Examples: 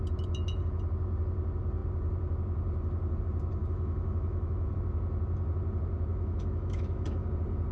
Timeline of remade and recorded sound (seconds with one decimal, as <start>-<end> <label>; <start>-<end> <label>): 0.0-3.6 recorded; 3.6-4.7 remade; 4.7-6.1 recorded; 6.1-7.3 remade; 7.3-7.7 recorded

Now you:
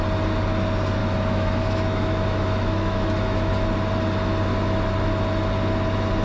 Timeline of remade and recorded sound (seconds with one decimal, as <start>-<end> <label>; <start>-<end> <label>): 0.0-1.0 recorded; 1.0-3.5 remade; 3.5-6.2 recorded

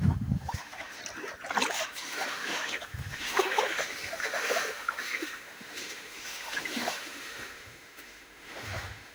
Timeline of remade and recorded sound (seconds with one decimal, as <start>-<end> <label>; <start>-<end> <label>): 0.0-1.0 remade; 1.0-1.7 recorded; 1.7-9.1 remade

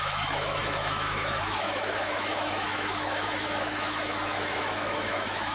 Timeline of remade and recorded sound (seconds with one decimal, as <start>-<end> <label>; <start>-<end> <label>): 0.0-5.5 remade

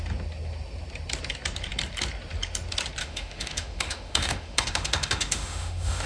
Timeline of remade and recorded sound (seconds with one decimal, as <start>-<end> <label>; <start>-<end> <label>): 0.0-3.0 recorded; 3.0-6.1 remade

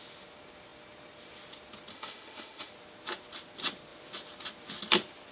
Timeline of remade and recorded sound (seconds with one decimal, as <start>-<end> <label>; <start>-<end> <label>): 0.0-1.9 recorded; 1.9-2.7 remade; 2.7-5.3 recorded